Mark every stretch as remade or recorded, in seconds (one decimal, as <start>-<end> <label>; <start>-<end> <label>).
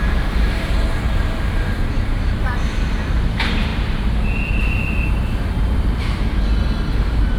0.0-3.7 remade; 3.7-5.0 recorded; 5.0-6.5 remade; 6.5-7.0 recorded; 7.0-7.4 remade